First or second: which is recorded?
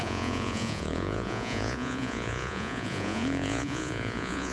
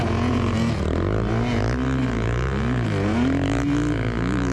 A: second